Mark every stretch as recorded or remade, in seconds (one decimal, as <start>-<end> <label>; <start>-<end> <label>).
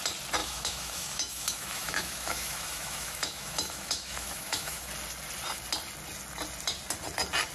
0.0-0.4 recorded; 0.4-4.9 remade; 4.9-7.5 recorded